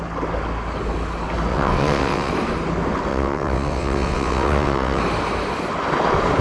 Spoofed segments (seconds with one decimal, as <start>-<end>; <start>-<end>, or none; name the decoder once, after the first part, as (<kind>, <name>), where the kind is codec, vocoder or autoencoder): 1.5-2.3 (vocoder, WaveNeXt); 3.1-5.0